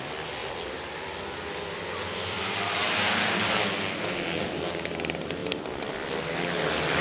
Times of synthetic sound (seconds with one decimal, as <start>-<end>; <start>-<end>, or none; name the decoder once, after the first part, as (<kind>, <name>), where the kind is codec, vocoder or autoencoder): 0.4-4.6 (vocoder, BigVGAN v2); 5.4-7.0